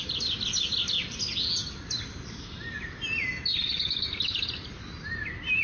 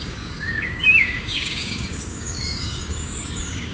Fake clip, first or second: second